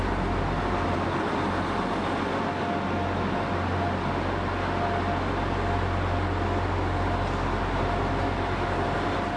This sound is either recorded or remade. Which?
recorded